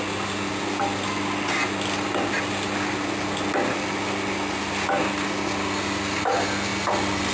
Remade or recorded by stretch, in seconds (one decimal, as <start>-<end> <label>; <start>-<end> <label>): 0.0-7.3 recorded

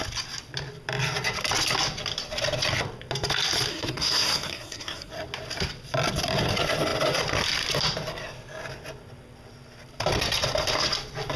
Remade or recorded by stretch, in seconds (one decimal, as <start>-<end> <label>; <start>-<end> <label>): 0.0-3.7 recorded; 3.7-5.1 remade; 5.1-11.4 recorded

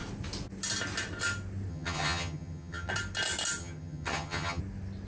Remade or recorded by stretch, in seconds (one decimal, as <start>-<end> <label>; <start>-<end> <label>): 0.0-1.7 recorded; 1.7-2.9 remade; 2.9-3.6 recorded; 3.6-4.6 remade; 4.6-5.1 recorded